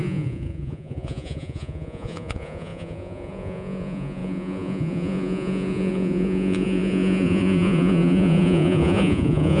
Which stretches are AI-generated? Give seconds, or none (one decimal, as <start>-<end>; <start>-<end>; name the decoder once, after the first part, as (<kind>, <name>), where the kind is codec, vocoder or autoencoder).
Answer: 0.0-9.6 (vocoder, Vocos)